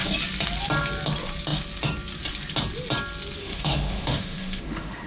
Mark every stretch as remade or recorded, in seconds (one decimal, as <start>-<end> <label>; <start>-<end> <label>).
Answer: 0.0-3.4 recorded; 3.4-5.1 remade